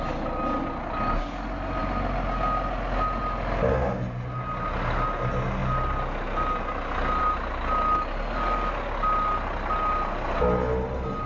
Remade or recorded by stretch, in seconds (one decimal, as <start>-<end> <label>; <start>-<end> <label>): 0.0-11.3 recorded